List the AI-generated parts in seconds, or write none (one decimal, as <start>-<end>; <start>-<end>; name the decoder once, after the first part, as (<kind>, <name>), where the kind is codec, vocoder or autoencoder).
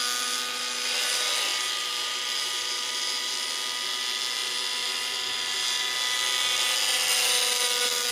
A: 1.5-3.5 (vocoder, BigVGAN v2); 4.4-5.8